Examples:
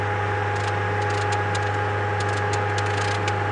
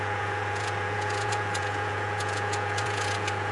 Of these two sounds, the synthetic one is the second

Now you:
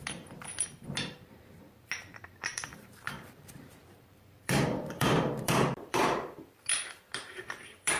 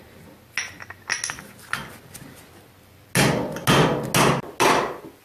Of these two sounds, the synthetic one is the first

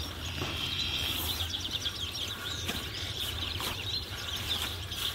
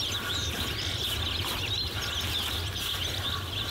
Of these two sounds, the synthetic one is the first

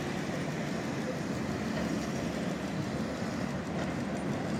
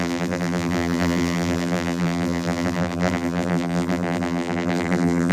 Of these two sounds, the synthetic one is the second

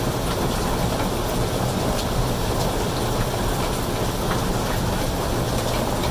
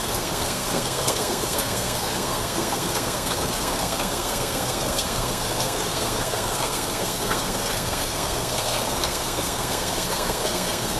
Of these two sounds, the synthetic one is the second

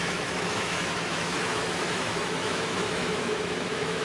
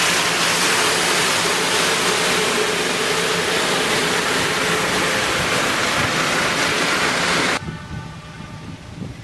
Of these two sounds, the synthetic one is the first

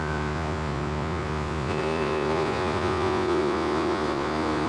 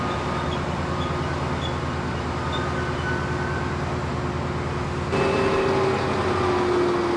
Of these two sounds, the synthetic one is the first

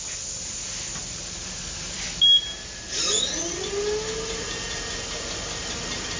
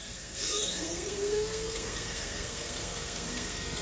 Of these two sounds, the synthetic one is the second